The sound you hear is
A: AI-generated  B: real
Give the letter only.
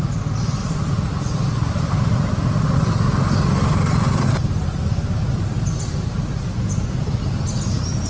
B